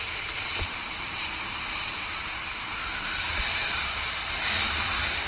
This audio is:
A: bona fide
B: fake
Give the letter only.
B